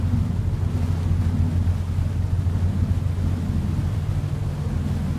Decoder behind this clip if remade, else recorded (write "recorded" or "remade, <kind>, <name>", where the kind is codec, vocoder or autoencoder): recorded